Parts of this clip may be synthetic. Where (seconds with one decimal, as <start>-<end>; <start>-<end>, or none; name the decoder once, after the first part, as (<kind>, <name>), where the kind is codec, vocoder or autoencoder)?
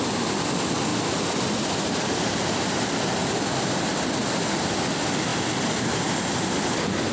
0.9-1.6 (vocoder, BigVGAN v2)